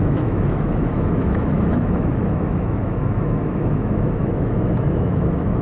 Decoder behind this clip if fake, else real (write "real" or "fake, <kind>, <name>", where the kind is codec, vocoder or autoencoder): fake, autoencoder, DAC-VAE